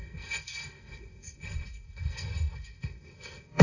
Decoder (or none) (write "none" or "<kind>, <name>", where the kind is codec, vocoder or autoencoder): codec, SNAC